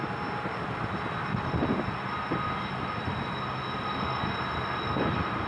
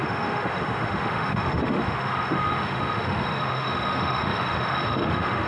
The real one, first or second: first